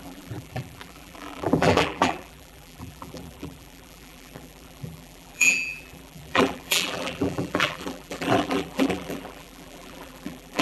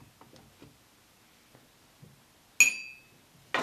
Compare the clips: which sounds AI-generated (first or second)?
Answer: first